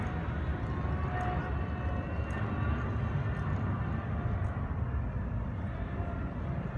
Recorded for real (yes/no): yes